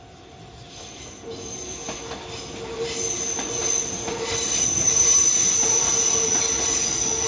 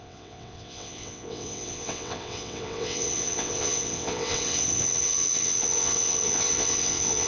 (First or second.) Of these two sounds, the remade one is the second